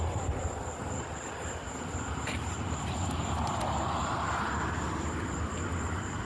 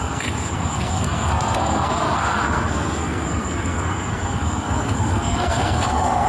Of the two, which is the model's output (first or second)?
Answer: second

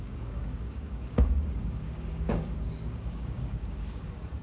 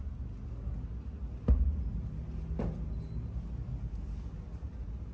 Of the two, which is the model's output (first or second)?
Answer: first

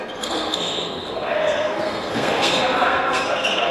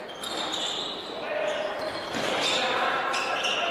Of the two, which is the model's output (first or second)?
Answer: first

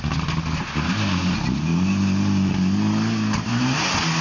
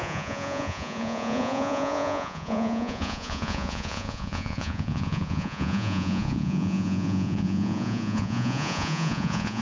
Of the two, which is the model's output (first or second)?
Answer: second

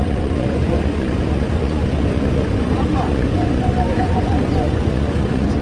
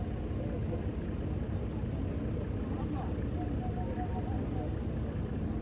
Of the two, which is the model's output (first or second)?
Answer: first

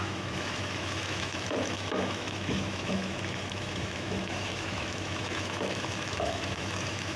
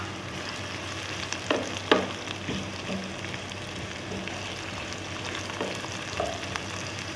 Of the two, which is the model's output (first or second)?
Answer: first